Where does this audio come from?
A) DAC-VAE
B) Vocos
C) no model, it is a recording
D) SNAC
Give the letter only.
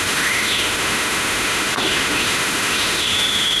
A